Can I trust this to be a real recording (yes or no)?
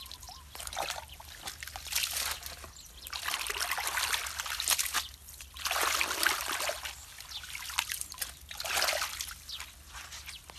yes